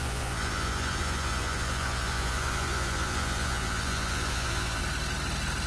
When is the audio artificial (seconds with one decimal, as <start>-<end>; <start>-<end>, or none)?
0.0-4.8